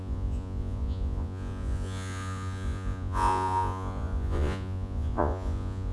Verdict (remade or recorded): remade